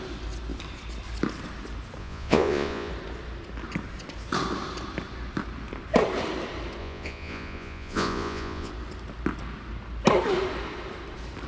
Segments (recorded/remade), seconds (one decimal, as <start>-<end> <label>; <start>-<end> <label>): 0.0-2.0 recorded; 2.0-2.9 remade; 2.9-6.8 recorded; 6.8-8.7 remade; 8.7-11.5 recorded